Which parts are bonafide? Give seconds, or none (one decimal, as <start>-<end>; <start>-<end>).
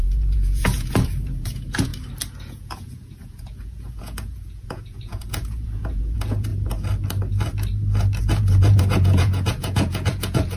1.9-2.4; 6.5-8.2